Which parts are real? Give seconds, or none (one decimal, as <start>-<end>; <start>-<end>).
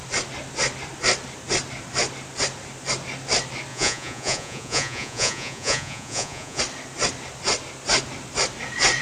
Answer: 0.0-3.7; 6.6-9.0